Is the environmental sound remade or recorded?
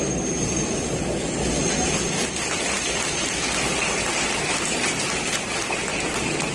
recorded